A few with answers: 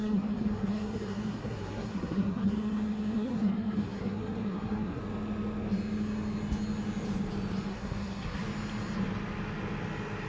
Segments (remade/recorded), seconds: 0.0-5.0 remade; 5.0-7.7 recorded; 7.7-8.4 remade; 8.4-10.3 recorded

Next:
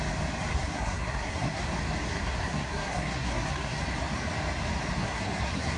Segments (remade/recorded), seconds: 0.0-0.5 recorded; 0.5-1.6 remade; 1.6-2.0 recorded; 2.0-3.8 remade; 3.8-5.0 recorded; 5.0-5.8 remade